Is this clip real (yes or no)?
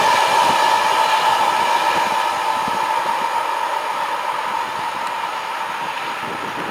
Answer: yes